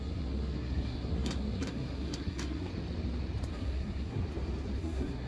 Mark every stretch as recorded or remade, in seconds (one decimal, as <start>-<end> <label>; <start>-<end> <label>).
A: 0.0-2.7 remade; 2.7-3.5 recorded; 3.5-4.2 remade; 4.2-4.8 recorded; 4.8-5.3 remade